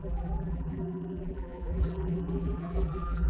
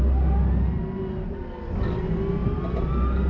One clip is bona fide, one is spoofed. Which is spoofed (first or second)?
first